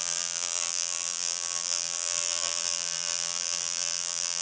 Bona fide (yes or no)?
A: no